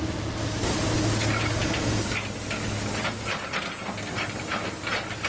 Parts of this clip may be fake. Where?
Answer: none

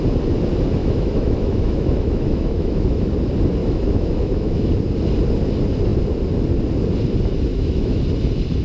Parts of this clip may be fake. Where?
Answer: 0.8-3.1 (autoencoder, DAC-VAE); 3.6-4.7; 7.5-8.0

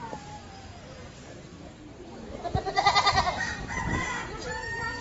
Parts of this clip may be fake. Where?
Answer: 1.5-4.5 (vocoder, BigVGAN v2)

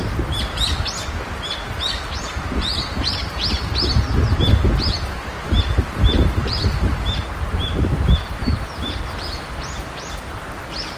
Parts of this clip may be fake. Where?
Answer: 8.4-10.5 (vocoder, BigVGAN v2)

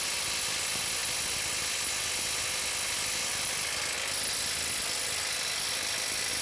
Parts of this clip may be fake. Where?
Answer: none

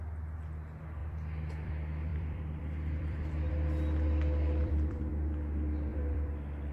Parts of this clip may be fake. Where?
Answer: 1.0-1.7 (vocoder, BigVGAN v2); 2.1-3.5; 4.6-5.1; 5.9-6.7

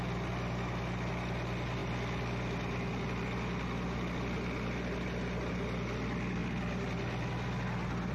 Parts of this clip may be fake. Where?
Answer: none